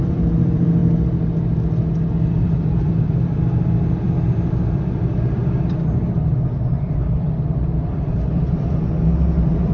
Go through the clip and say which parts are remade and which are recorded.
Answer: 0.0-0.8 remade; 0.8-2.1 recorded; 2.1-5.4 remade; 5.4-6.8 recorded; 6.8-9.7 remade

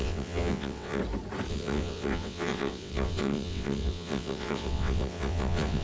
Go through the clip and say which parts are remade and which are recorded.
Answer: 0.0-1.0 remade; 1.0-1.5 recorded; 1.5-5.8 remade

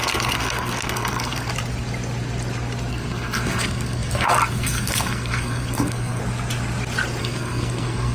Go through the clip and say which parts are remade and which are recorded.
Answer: 0.0-1.5 remade; 1.5-2.9 recorded; 2.9-6.2 remade; 6.2-7.2 recorded; 7.2-8.1 remade